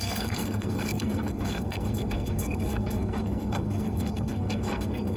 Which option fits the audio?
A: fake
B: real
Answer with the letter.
A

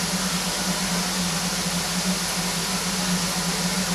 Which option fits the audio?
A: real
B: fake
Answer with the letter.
A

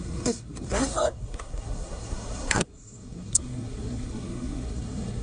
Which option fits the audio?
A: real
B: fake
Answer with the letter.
B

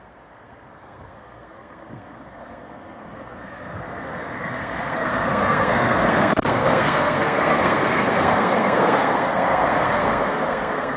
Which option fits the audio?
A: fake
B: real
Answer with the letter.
A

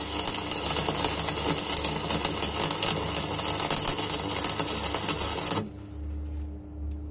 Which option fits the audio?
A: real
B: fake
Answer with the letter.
A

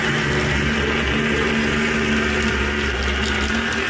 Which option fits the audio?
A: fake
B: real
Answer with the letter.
B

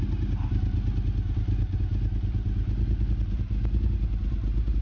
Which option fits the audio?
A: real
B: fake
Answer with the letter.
A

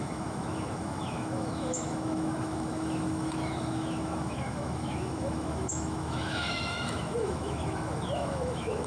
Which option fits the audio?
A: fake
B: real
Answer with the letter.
A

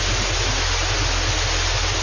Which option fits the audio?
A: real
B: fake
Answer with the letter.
A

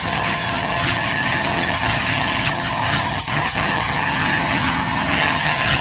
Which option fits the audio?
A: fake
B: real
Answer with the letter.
A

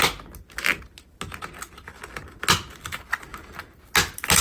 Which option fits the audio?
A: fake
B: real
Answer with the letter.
B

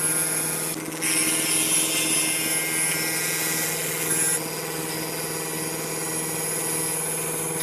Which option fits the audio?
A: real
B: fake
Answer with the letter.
A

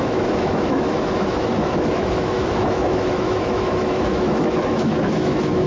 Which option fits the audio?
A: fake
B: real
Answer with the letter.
A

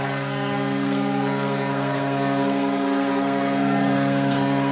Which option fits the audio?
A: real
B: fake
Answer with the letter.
B